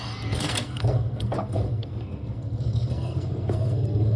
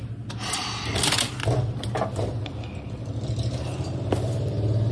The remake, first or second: first